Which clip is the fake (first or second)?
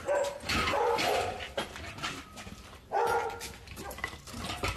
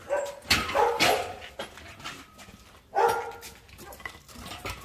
first